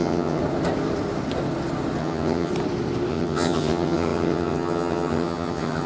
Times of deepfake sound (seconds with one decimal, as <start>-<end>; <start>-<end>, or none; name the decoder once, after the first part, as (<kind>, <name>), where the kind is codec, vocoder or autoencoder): 0.0-0.4 (vocoder, HiFi-GAN); 2.0-2.5; 3.1-5.9

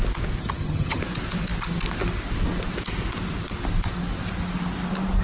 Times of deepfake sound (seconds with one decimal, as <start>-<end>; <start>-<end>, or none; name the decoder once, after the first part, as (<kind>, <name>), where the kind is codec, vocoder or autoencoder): 0.4-1.0 (vocoder, HiFi-GAN)

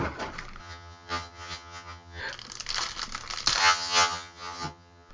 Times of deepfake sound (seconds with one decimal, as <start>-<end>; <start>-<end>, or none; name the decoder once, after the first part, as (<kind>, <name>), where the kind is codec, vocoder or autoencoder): 0.6-2.2 (vocoder, HiFi-GAN); 3.6-5.1

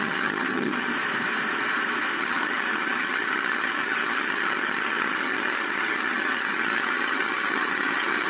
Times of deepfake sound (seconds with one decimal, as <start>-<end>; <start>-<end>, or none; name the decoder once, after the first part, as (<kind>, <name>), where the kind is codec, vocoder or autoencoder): 0.0-0.9 (vocoder, HiFi-GAN); 2.2-8.3

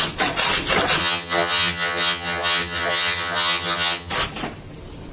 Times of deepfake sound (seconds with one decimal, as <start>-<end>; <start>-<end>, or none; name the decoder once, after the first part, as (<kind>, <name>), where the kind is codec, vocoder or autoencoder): 1.0-4.1 (vocoder, HiFi-GAN)

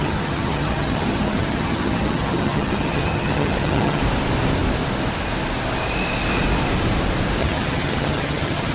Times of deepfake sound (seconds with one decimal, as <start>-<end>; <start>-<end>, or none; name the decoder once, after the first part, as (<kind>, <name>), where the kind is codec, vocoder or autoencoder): 0.0-4.0 (vocoder, HiFi-GAN); 7.4-8.7

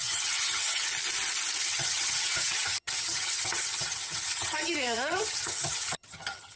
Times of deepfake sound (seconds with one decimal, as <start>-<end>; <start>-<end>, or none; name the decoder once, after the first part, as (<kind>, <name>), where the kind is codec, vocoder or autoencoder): 0.0-0.9 (vocoder, HiFi-GAN); 1.6-6.6

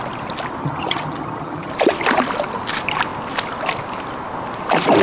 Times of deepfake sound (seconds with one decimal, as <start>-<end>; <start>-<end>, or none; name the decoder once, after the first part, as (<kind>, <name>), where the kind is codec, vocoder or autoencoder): 0.6-1.7 (vocoder, HiFi-GAN)